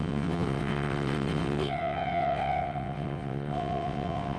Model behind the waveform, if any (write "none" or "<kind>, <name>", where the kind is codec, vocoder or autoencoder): vocoder, WaveNeXt